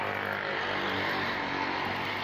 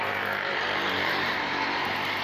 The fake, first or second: second